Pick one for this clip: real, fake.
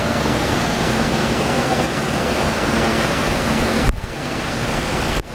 fake